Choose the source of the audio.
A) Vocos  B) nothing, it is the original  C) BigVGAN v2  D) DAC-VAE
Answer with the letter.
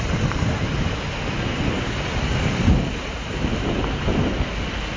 B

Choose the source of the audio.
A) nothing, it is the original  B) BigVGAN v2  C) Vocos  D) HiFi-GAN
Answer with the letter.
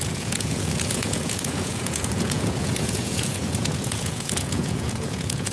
C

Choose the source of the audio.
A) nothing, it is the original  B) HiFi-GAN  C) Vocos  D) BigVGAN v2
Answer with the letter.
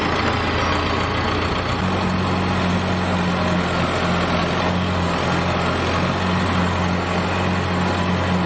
A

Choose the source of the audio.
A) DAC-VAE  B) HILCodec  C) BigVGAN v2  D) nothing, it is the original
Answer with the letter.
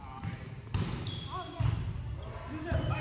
D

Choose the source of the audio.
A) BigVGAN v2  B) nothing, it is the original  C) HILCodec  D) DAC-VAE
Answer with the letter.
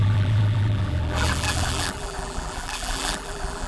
A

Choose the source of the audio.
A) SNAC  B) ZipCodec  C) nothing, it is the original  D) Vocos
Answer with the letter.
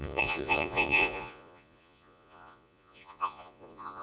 D